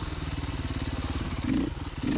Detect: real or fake real